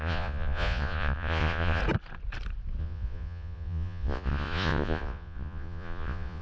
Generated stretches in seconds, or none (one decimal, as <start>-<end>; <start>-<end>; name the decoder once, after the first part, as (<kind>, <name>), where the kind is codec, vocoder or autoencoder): 0.0-1.8 (vocoder, Vocos); 2.8-6.4